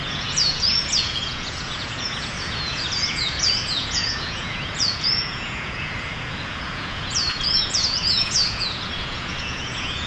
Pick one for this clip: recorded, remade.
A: remade